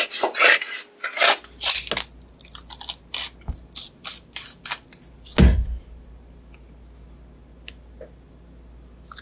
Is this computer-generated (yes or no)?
no